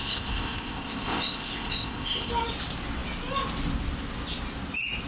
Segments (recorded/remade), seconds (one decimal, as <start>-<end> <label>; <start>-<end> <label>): 0.0-2.3 remade; 2.3-5.1 recorded